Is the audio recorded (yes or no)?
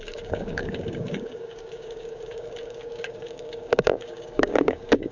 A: no